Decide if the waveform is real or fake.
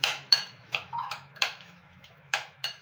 fake